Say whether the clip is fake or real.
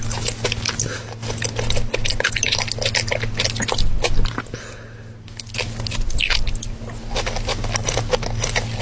real